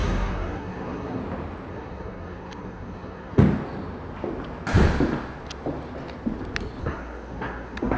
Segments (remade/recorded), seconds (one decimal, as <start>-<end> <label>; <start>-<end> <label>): 0.0-1.2 remade; 1.2-1.7 recorded; 1.7-3.4 remade; 3.4-6.8 recorded; 6.8-8.0 remade